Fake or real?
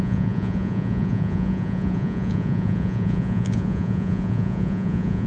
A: fake